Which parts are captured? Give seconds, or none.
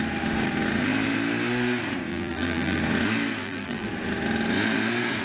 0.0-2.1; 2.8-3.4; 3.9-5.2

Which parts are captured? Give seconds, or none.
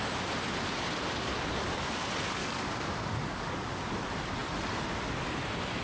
0.0-2.4; 3.8-5.8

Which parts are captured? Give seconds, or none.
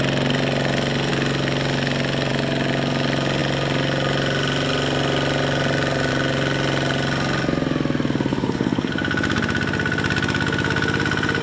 0.0-8.3; 8.9-11.4